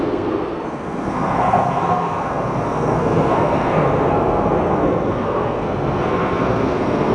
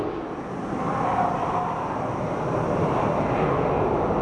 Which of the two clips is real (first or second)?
second